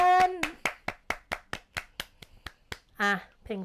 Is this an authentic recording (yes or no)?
yes